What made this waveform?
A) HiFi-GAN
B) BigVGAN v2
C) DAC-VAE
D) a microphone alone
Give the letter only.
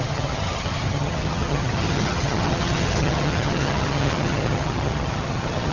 A